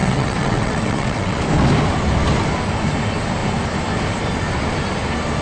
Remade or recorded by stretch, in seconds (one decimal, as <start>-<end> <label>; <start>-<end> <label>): 0.0-1.4 remade; 1.4-5.4 recorded